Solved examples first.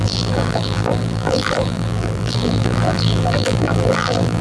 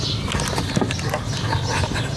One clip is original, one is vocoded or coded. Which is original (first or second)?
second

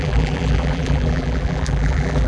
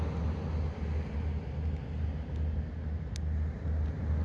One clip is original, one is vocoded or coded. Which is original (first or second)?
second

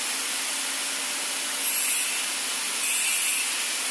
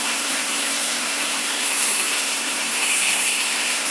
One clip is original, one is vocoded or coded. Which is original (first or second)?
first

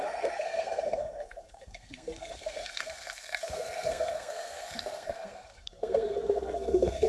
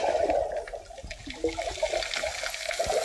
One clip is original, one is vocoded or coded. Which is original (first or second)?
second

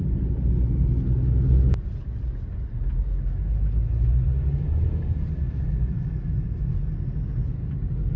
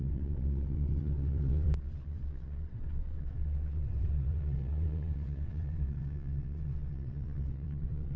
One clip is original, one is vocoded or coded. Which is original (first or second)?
first